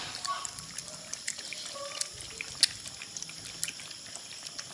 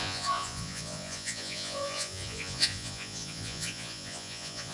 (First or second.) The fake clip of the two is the second